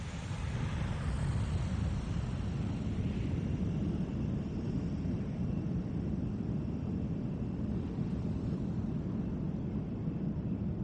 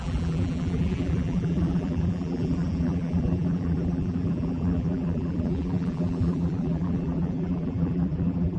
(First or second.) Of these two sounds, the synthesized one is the second